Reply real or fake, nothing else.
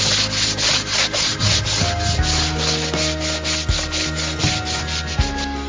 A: real